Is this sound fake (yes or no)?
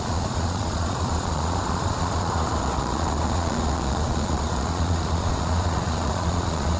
yes